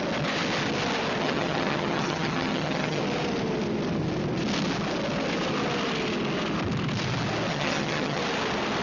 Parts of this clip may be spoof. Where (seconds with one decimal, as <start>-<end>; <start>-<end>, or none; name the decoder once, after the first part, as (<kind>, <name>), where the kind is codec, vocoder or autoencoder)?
1.2-3.0 (vocoder, HiFi-GAN); 7.5-8.2